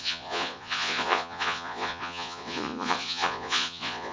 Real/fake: fake